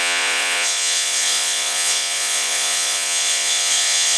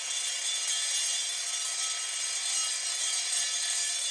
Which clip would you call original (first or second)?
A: second